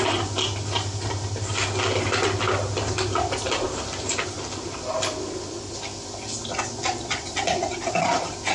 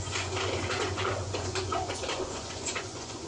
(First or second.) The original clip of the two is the first